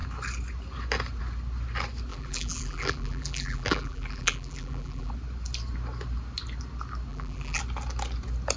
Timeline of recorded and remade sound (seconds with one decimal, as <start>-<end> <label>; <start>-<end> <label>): 0.0-2.1 recorded; 2.1-5.1 remade; 5.1-7.1 recorded; 7.1-7.6 remade; 7.6-8.6 recorded